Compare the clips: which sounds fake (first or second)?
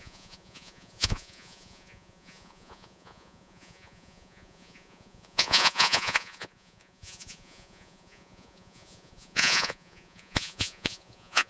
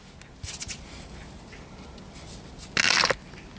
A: first